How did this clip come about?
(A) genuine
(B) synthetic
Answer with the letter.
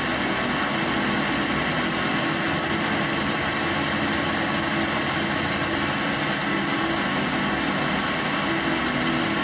A